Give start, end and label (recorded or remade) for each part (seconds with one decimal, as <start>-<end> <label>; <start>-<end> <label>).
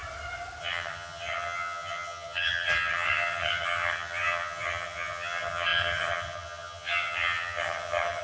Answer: 0.0-0.6 recorded; 0.6-8.2 remade